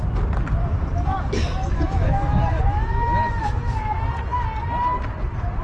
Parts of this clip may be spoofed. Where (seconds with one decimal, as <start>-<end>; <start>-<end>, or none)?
0.6-4.0